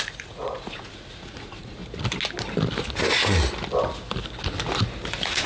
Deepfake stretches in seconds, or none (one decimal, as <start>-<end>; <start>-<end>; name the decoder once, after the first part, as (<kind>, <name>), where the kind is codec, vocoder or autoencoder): 0.0-1.8 (vocoder, Vocos); 5.1-5.5